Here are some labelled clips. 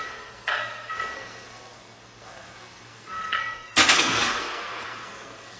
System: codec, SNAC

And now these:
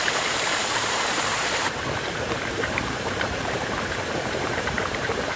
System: vocoder, BigVGAN v2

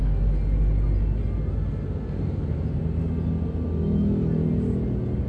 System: none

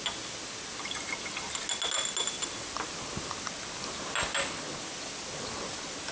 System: none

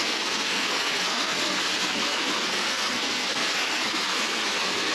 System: codec, SNAC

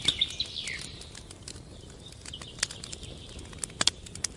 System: none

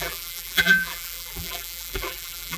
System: vocoder, BigVGAN v2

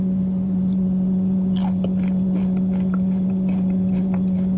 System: none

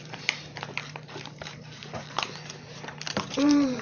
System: vocoder, BigVGAN v2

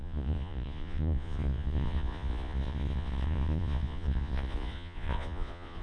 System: vocoder, Vocos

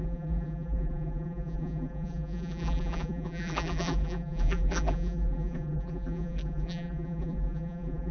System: vocoder, BigVGAN v2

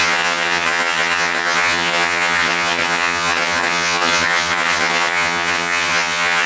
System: vocoder, HiFi-GAN